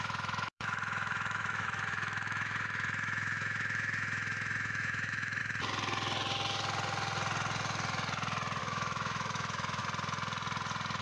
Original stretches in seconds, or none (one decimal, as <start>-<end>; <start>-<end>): 5.4-8.6; 9.8-11.0